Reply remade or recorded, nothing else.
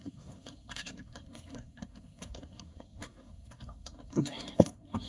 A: remade